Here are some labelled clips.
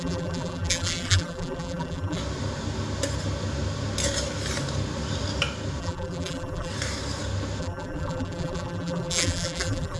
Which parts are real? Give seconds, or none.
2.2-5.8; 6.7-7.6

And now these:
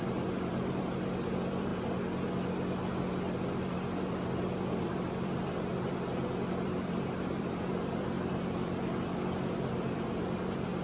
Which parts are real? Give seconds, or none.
1.7-3.6; 5.7-6.5

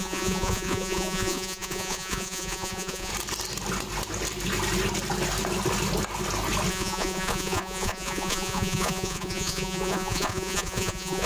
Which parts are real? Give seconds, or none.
3.1-6.7

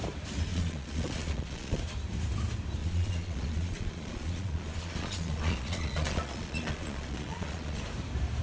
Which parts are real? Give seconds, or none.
0.0-0.5; 1.8-2.8; 7.8-8.4

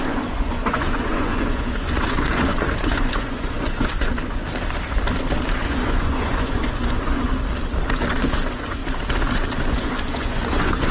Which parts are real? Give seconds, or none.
4.4-5.6; 7.3-8.1; 8.8-9.7

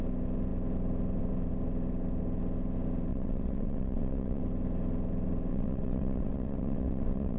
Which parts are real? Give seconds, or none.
0.0-3.1; 4.4-5.5

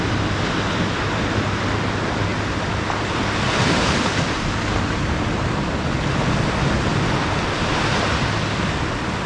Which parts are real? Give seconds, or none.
0.0-9.3